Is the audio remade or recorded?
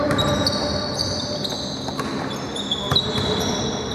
recorded